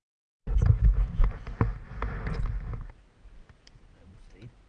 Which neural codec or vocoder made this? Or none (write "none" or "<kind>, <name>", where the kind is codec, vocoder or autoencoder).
none